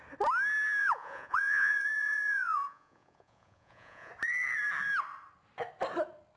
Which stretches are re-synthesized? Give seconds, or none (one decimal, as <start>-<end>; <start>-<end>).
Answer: 0.8-4.1